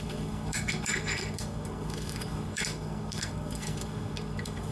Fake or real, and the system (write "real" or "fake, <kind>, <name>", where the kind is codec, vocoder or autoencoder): fake, codec, SNAC